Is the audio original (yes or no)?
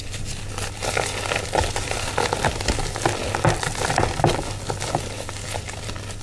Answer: yes